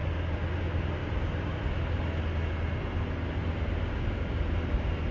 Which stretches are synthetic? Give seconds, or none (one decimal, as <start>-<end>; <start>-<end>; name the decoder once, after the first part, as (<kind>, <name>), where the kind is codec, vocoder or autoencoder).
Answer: none